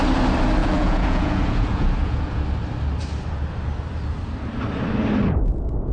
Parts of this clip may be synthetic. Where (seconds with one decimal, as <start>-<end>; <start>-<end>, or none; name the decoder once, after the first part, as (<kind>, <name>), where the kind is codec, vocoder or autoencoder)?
0.6-2.4 (vocoder, Vocos)